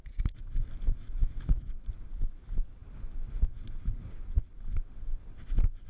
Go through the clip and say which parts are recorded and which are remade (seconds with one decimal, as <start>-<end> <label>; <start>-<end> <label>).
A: 0.0-5.9 recorded